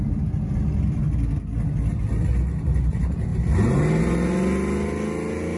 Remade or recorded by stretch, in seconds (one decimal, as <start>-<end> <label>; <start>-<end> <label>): 0.0-5.6 recorded